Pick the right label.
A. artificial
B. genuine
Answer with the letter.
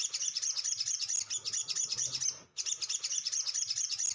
B